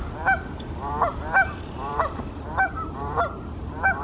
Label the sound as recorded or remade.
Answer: remade